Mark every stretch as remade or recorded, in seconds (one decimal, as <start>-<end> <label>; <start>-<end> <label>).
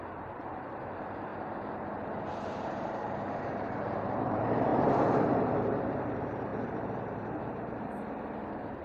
0.0-1.3 remade; 1.3-2.2 recorded; 2.2-8.8 remade